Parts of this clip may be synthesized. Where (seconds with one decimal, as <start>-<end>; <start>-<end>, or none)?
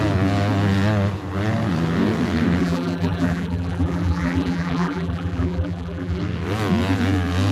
2.6-6.2